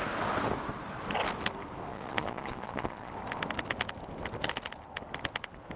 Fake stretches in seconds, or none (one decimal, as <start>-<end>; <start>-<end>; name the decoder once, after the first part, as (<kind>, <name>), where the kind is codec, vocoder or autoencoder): 1.9-3.1 (vocoder, Vocos)